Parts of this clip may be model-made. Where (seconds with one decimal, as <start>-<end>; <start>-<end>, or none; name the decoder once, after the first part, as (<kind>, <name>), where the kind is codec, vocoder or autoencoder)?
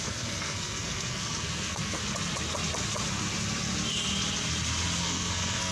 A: 0.0-2.0 (codec, SNAC); 5.0-5.7